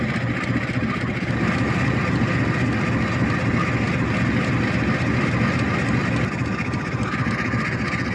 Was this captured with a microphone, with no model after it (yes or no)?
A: yes